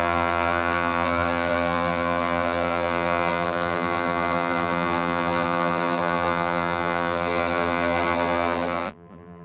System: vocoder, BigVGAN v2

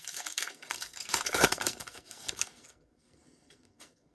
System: codec, SNAC